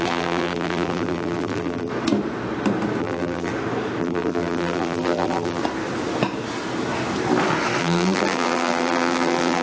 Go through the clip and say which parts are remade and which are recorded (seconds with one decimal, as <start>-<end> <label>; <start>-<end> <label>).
0.0-1.9 remade; 1.9-3.0 recorded; 3.0-3.5 remade; 3.5-4.0 recorded; 4.0-5.6 remade; 5.6-7.8 recorded; 7.8-9.6 remade